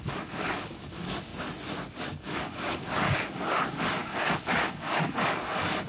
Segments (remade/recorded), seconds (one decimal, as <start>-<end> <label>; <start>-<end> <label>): 0.0-1.3 remade; 1.3-2.0 recorded; 2.0-5.9 remade